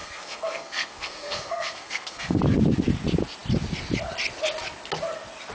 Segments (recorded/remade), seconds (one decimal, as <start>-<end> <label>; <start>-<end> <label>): 0.0-2.4 remade; 2.4-5.5 recorded